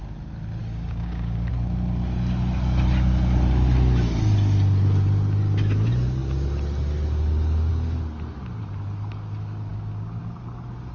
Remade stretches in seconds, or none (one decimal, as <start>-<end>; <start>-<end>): 0.6-1.5; 9.7-10.2